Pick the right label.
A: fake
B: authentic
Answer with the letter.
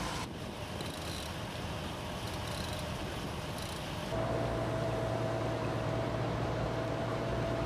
B